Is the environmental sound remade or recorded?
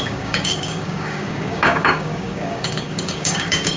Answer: remade